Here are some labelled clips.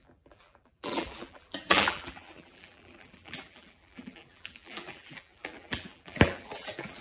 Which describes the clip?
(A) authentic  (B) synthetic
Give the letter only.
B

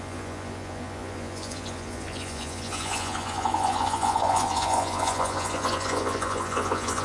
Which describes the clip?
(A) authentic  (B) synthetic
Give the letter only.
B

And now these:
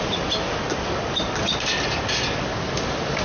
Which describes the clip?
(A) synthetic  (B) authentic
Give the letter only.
B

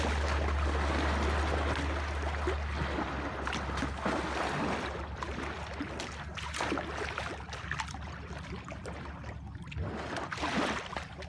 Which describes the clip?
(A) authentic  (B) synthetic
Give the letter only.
A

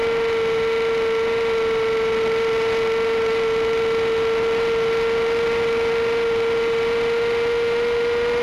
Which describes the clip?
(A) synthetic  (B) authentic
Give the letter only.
B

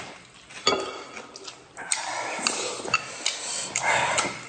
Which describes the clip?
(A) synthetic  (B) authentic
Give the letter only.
A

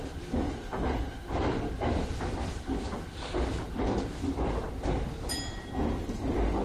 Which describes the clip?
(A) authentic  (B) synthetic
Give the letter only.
A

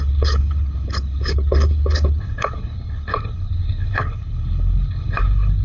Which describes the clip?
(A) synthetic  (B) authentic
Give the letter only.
A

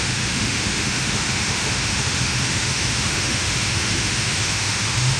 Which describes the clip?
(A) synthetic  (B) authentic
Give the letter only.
A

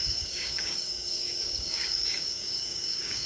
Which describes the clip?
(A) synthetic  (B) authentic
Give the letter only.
A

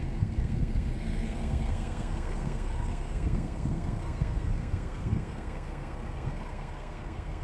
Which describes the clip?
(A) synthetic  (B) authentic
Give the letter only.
A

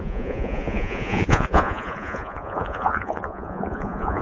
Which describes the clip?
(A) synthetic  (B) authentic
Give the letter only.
A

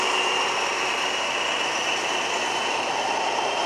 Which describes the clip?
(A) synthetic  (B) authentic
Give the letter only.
B